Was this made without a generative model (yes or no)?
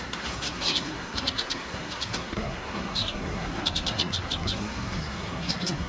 no